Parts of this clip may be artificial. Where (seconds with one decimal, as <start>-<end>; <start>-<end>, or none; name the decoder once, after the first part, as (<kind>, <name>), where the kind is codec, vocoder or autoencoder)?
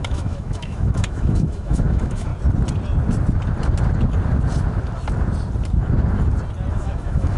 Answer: 0.0-2.3 (autoencoder, DAC-VAE); 6.7-7.4